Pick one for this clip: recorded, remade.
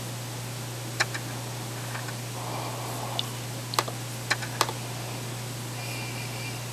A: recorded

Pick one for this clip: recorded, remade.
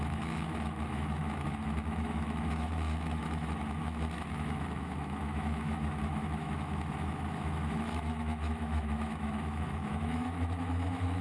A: remade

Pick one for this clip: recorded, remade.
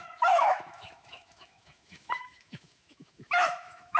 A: remade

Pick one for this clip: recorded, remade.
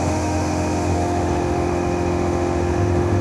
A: remade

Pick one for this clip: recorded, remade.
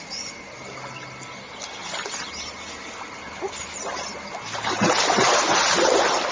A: recorded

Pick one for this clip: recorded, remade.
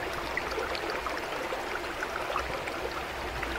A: recorded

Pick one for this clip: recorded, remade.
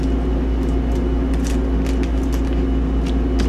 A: recorded